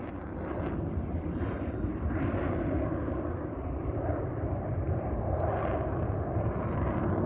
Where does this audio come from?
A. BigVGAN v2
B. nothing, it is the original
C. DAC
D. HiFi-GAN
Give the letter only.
A